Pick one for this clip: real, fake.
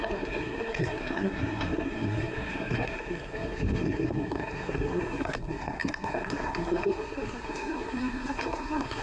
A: fake